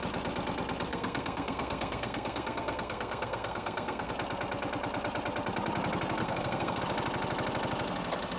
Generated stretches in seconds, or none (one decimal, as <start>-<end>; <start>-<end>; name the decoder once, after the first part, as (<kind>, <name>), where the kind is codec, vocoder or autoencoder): 0.9-4.1 (codec, SNAC); 6.2-6.8